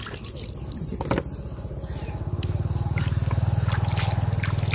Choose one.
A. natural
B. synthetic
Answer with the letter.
A